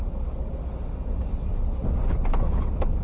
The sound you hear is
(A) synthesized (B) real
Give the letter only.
B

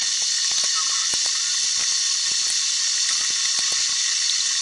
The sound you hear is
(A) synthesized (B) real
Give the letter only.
B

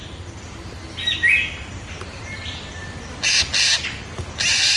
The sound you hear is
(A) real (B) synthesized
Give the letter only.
A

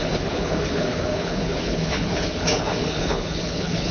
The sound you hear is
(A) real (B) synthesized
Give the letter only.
B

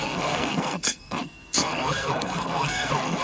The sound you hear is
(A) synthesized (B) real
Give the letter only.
A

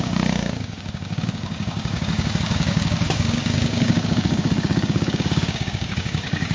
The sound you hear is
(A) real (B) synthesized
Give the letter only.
B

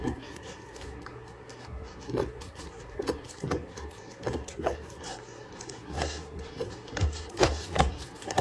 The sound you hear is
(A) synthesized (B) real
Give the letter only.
A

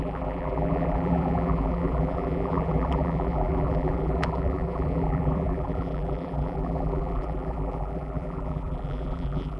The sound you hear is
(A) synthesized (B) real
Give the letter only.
A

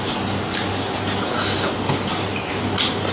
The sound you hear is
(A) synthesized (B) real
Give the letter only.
B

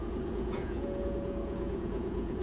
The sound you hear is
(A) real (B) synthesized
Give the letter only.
B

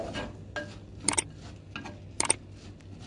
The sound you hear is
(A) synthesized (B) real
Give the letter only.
B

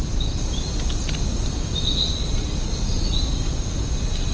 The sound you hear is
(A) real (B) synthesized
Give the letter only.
A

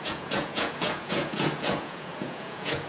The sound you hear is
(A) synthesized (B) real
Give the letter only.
A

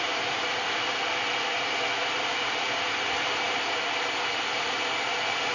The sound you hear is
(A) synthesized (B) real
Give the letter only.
B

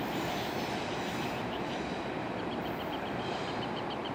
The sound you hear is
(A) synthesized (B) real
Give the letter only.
A